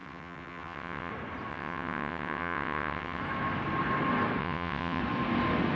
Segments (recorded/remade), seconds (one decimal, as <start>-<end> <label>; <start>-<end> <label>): 0.0-1.1 remade; 1.1-1.5 recorded; 1.5-3.2 remade; 3.2-4.4 recorded; 4.4-5.0 remade; 5.0-5.8 recorded